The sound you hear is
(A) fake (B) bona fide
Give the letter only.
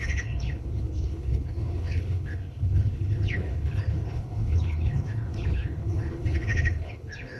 A